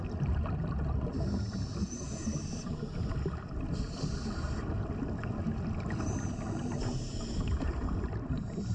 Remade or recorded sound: recorded